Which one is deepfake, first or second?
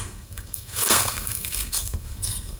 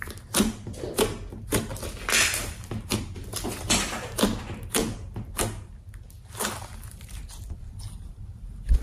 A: first